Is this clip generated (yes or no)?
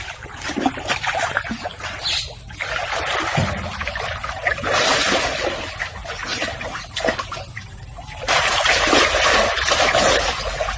no